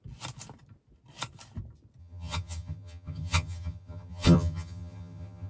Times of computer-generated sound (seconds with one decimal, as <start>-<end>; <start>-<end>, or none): 2.0-5.5